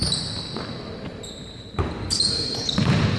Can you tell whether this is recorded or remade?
recorded